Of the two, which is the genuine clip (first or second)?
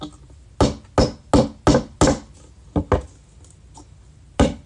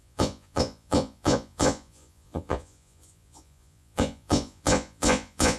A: first